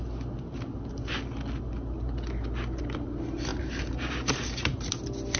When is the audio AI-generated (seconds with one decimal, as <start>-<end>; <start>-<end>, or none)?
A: 3.5-4.9

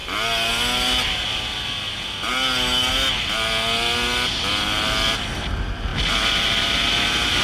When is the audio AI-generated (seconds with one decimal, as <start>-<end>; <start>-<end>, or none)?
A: none